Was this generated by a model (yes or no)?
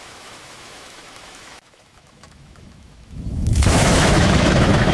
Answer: yes